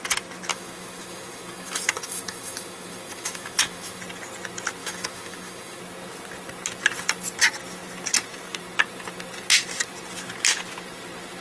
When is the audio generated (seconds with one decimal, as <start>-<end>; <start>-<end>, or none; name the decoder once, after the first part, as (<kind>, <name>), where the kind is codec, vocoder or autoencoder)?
0.5-4.0 (autoencoder, DAC-VAE); 4.8-5.8